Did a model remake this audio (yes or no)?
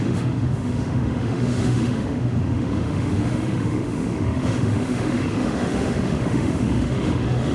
yes